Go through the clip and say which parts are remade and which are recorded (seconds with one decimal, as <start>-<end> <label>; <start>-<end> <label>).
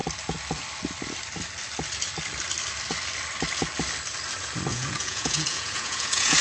0.0-4.7 recorded; 4.7-6.4 remade